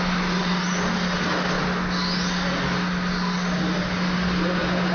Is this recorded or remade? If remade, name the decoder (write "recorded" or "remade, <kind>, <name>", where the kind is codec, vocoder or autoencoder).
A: recorded